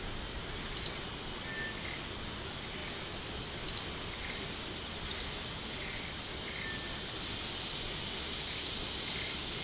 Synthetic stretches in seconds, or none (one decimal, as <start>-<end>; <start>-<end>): none